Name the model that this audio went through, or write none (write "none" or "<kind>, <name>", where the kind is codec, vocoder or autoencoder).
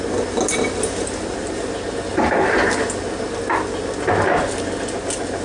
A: none